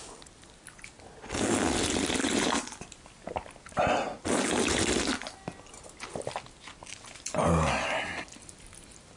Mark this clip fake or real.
real